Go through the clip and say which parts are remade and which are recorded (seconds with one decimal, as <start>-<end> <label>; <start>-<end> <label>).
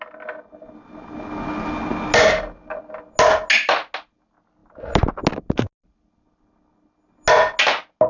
0.0-8.1 recorded